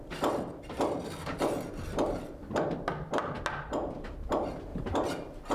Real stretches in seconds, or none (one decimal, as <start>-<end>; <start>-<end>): 0.0-4.7